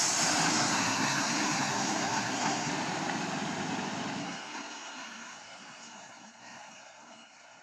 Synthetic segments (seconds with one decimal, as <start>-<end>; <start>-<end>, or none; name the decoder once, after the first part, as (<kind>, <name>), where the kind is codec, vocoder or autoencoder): 0.5-2.7 (codec, SNAC); 4.2-7.6